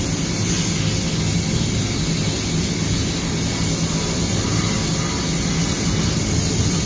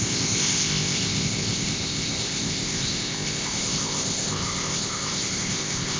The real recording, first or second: first